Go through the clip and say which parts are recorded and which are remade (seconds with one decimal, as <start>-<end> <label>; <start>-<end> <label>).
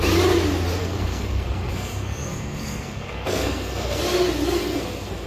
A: 0.0-0.8 recorded; 0.8-4.0 remade; 4.0-4.6 recorded; 4.6-5.3 remade